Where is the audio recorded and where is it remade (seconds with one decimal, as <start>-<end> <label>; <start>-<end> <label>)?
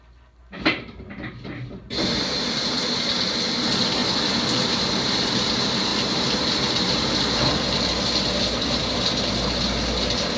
0.0-4.0 recorded; 4.0-5.5 remade; 5.5-5.9 recorded; 5.9-7.8 remade; 7.8-10.4 recorded